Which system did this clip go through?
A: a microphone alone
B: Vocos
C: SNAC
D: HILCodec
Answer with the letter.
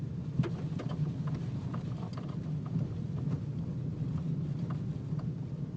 A